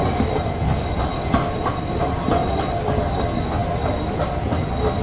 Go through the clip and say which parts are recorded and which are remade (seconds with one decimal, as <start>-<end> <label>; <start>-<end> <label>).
0.0-5.0 recorded